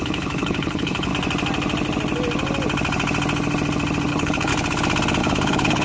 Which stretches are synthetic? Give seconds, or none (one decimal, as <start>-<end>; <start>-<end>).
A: 0.0-1.1; 4.1-4.5; 5.2-5.8